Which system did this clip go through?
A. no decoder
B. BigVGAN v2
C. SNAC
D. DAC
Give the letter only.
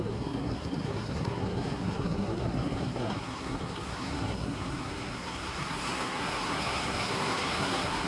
C